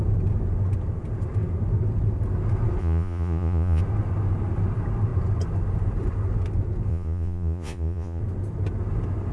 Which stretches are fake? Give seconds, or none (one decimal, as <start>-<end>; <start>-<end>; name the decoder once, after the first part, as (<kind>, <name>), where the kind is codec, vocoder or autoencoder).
2.8-3.8 (vocoder, Vocos); 6.9-8.2